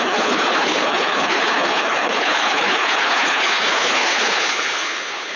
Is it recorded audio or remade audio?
remade